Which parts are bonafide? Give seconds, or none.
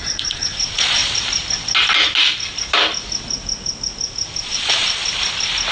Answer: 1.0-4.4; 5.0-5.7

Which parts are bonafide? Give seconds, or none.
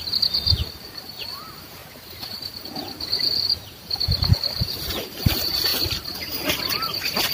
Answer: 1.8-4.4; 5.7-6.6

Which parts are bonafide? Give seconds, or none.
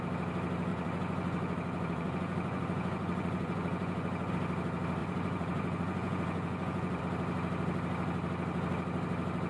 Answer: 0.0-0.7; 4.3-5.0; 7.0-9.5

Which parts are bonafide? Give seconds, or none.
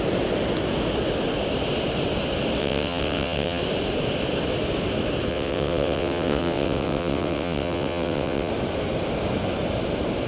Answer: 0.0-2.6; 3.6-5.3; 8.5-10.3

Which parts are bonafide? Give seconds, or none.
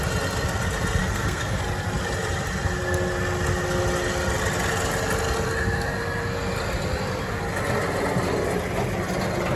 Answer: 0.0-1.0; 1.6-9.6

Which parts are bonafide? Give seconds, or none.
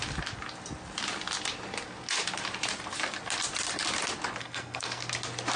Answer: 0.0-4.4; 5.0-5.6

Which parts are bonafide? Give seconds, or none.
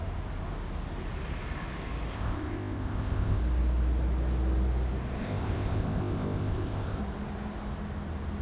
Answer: 0.0-2.1; 3.4-5.2; 7.0-8.4